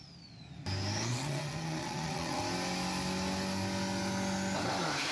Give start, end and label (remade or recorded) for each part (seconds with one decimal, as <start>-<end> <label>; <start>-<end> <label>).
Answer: 0.0-1.1 recorded; 1.1-2.4 remade; 2.4-5.1 recorded